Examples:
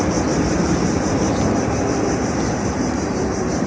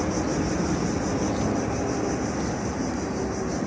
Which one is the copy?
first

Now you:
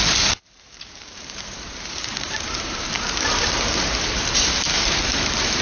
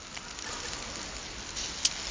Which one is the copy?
first